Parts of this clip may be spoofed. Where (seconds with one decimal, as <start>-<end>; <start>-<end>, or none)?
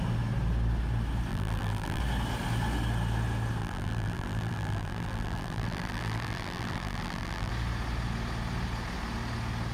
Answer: 1.3-2.0; 3.6-7.5